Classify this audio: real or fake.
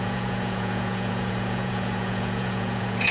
fake